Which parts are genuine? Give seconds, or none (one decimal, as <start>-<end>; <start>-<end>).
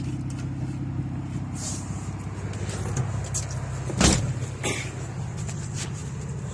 0.0-6.5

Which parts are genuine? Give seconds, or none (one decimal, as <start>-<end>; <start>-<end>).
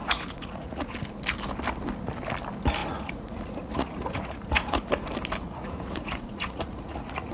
0.9-2.8; 4.9-5.4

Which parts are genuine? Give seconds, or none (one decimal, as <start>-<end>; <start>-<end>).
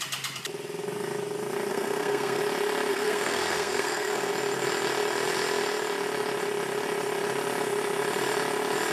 0.0-1.7; 2.4-2.9; 4.3-8.9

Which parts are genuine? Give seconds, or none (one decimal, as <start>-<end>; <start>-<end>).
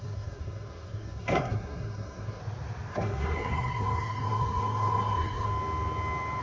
2.4-2.9; 5.5-6.4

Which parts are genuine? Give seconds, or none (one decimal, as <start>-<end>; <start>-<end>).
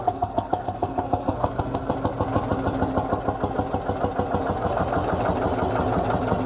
1.9-6.5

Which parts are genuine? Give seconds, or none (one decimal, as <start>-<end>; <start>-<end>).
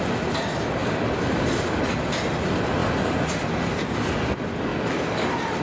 0.0-5.6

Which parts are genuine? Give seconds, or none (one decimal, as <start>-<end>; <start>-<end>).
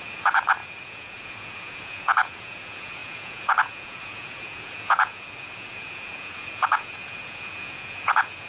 none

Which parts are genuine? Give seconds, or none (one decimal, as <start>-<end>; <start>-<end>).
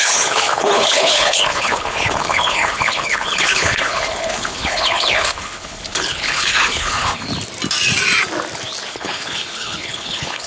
7.3-8.9